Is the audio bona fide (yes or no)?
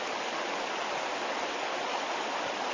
yes